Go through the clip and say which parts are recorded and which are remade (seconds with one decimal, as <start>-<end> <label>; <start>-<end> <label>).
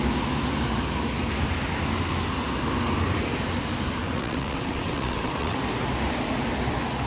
0.0-4.0 recorded; 4.0-5.6 remade; 5.6-7.1 recorded